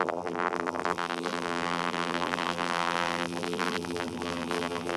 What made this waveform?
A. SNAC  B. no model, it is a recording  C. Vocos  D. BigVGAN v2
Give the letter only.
D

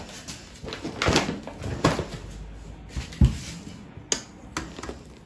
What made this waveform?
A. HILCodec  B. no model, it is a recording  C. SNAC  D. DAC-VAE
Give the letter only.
B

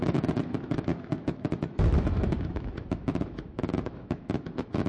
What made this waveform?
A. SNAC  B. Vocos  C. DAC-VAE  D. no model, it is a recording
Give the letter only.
C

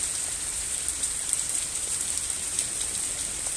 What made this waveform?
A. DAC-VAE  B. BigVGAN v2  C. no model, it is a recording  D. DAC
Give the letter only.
B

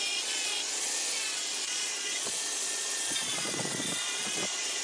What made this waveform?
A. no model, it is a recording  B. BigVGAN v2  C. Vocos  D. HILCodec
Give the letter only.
C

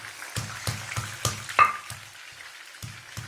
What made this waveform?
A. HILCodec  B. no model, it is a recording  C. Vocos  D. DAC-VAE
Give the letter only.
B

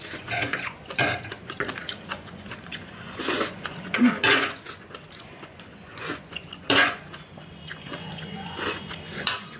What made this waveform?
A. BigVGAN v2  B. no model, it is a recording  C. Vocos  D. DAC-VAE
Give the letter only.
C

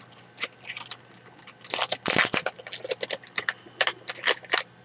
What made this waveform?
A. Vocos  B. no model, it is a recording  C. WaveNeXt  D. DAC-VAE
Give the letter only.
B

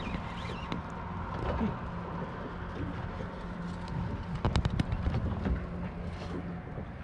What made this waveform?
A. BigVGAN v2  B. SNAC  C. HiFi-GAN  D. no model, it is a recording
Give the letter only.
D